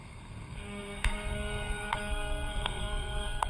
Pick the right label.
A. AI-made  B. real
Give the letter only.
A